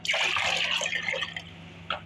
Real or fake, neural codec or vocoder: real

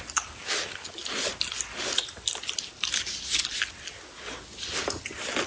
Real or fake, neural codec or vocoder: real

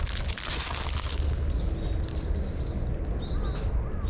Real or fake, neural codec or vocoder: real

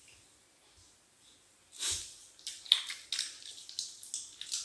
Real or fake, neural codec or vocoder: real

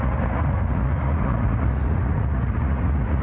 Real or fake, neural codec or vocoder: fake, vocoder, Vocos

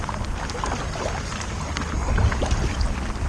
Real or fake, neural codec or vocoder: real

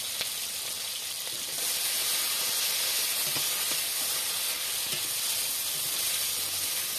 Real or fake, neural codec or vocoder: real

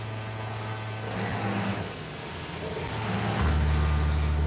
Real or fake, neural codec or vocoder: real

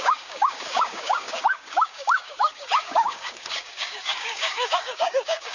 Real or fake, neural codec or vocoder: fake, codec, DAC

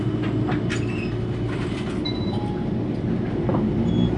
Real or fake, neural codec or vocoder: real